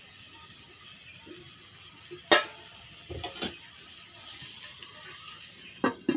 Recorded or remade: recorded